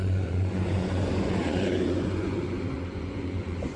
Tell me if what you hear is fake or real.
fake